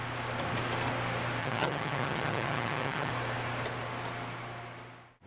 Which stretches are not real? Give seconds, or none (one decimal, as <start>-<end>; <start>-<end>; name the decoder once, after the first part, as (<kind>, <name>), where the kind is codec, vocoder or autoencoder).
1.4-3.1 (vocoder, HiFi-GAN)